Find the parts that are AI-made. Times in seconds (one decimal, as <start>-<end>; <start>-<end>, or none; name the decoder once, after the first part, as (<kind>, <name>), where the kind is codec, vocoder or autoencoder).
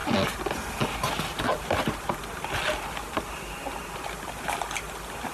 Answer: none